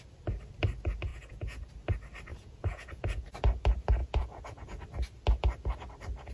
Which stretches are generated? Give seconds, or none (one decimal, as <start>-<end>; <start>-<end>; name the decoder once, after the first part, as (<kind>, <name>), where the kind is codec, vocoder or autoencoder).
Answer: 1.1-1.7 (vocoder, Vocos); 2.3-3.3; 4.0-4.8